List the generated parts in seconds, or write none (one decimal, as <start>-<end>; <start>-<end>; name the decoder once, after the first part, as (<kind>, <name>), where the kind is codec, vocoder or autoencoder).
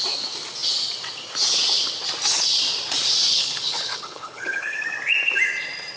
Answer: 3.3-4.8 (codec, HILCodec)